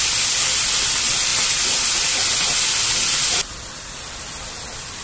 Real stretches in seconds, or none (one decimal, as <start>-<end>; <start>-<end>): 0.0-5.0